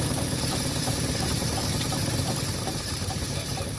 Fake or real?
fake